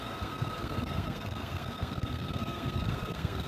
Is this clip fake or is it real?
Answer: fake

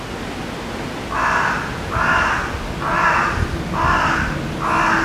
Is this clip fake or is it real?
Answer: real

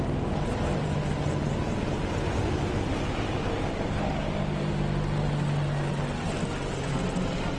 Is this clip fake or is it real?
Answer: real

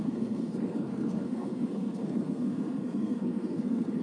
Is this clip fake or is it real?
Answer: fake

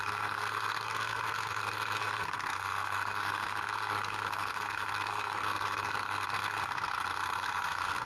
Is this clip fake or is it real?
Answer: fake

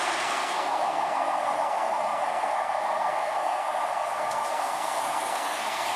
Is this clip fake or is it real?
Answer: fake